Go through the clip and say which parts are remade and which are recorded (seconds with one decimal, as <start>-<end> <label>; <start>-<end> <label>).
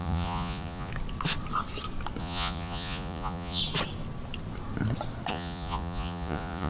0.0-0.9 remade; 0.9-2.2 recorded; 2.2-3.6 remade; 3.6-5.3 recorded; 5.3-6.7 remade